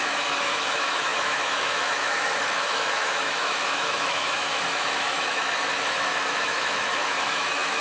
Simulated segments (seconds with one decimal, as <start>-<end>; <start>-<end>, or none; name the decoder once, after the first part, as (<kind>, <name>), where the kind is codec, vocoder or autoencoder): 0.0-7.8 (autoencoder, DAC-VAE)